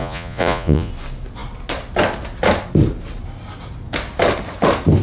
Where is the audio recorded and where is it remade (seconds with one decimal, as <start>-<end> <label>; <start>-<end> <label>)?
0.0-0.9 remade; 0.9-5.0 recorded